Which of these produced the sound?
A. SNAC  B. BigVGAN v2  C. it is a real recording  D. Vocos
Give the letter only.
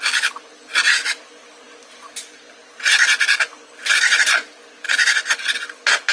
C